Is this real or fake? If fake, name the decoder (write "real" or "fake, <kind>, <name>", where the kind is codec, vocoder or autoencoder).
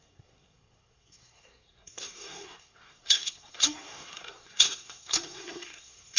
fake, codec, SNAC